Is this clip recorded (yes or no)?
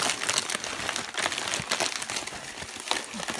yes